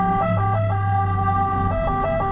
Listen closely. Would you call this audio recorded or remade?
recorded